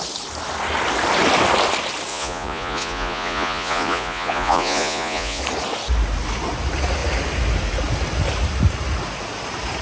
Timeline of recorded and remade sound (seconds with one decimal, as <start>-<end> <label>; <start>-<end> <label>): 0.0-2.1 recorded; 2.1-5.4 remade; 5.4-9.8 recorded